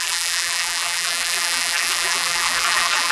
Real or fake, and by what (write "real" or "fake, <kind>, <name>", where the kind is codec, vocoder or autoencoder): fake, vocoder, BigVGAN v2